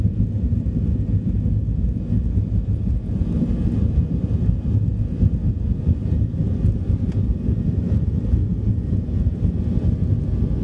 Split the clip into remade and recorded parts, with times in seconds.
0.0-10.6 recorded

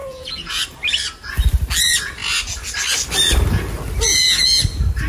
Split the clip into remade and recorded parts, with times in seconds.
0.0-0.6 remade; 0.6-4.1 recorded; 4.1-4.6 remade; 4.6-5.1 recorded